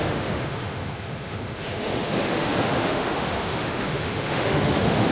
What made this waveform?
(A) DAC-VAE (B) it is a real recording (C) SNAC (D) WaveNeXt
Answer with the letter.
A